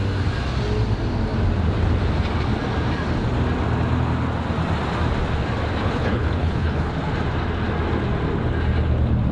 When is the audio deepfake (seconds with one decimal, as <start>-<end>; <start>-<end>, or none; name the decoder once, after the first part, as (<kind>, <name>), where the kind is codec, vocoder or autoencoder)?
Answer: 5.8-6.9 (codec, HILCodec)